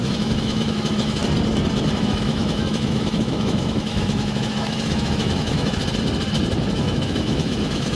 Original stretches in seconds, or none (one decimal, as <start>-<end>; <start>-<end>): 1.2-2.0; 5.8-6.7